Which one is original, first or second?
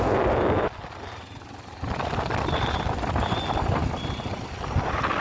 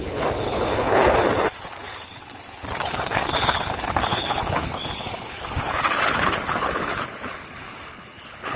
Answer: first